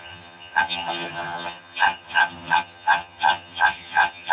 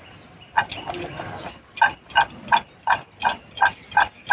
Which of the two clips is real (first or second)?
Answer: second